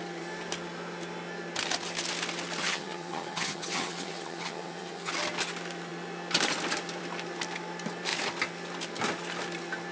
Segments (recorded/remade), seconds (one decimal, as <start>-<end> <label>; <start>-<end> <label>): 0.0-2.6 recorded; 2.6-5.1 remade; 5.1-9.9 recorded